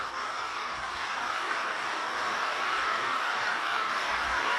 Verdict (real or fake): fake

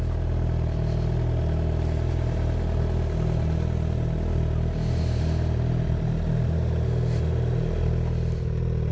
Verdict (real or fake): real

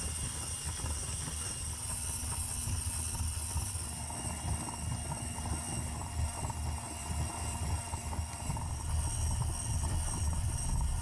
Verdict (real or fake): real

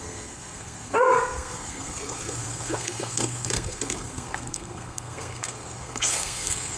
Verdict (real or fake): fake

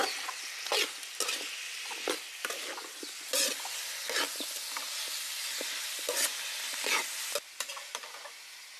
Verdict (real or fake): real